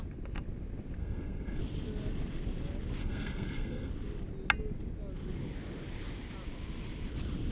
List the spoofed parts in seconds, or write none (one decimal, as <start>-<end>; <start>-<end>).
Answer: 1.0-1.6; 3.0-3.9